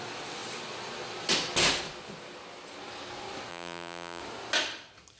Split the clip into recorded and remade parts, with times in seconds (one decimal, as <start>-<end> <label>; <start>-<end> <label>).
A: 0.0-3.5 recorded; 3.5-4.2 remade; 4.2-5.2 recorded